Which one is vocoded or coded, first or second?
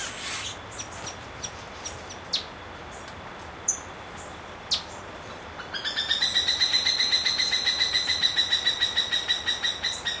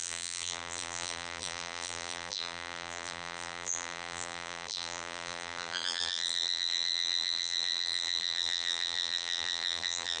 second